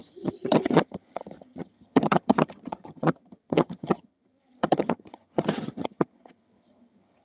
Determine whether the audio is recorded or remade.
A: remade